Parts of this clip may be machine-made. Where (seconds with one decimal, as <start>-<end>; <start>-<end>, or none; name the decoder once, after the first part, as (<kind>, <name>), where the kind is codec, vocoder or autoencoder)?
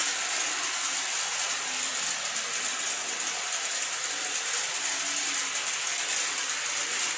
none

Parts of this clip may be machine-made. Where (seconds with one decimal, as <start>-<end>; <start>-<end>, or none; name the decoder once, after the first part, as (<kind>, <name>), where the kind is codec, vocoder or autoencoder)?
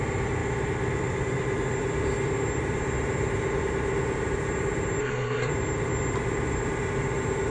5.0-5.5 (codec, SNAC)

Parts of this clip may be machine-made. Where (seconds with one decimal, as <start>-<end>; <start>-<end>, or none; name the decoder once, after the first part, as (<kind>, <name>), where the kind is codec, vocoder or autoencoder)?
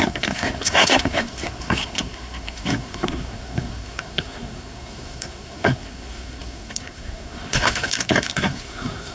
0.0-9.1 (codec, SNAC)